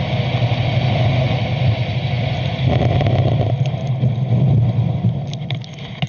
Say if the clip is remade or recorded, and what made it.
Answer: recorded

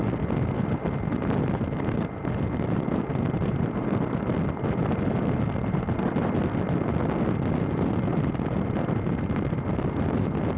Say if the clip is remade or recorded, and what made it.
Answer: recorded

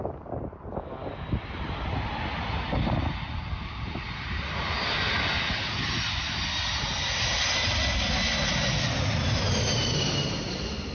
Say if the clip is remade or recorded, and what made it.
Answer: recorded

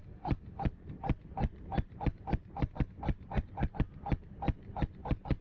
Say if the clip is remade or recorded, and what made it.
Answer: recorded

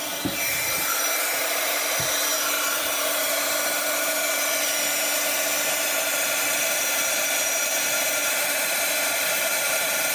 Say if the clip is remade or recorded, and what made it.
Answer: remade, vocoder, BigVGAN v2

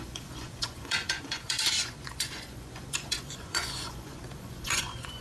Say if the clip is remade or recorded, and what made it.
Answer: remade, vocoder, Vocos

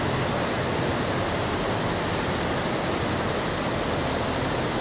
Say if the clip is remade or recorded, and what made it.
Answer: recorded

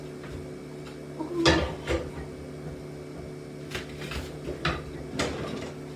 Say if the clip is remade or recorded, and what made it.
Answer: recorded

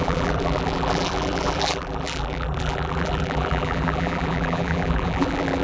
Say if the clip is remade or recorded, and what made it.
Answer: remade, vocoder, BigVGAN v2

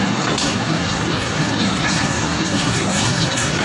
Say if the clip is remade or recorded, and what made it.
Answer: remade, codec, SNAC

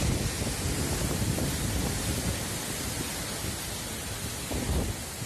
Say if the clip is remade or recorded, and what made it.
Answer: recorded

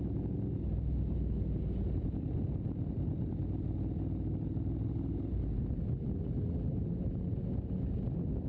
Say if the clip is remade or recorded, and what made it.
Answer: recorded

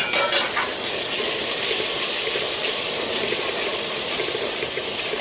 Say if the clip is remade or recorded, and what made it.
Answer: recorded